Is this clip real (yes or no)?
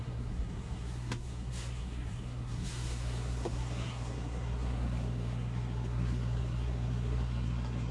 no